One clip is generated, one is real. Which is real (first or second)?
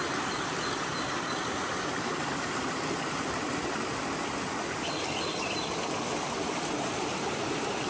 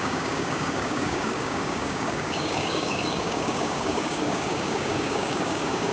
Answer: first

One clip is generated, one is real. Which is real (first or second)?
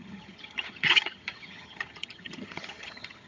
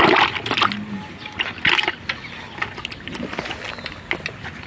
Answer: second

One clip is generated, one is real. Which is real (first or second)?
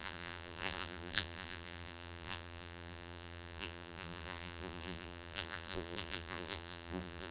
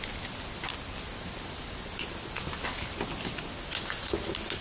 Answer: second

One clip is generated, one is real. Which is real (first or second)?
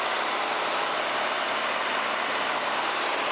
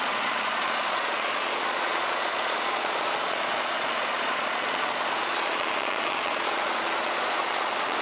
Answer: first